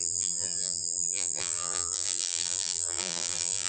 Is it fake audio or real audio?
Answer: fake